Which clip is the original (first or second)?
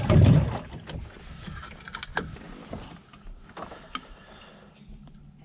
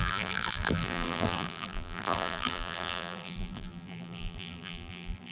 first